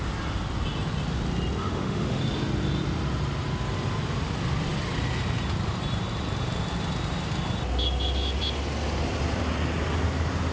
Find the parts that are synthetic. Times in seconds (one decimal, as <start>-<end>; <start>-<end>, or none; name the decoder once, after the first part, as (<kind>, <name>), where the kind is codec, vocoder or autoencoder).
1.6-2.2 (autoencoder, DAC-VAE)